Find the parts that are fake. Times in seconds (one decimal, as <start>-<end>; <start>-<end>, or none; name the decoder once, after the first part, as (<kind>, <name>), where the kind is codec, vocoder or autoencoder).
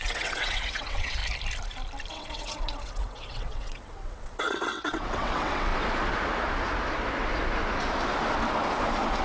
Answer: 0.0-1.2 (vocoder, WaveNeXt); 2.1-5.7